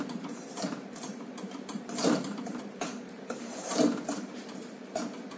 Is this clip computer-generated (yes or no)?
yes